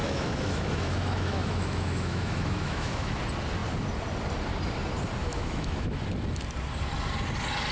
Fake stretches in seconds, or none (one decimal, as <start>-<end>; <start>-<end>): 0.0-3.2; 5.2-6.0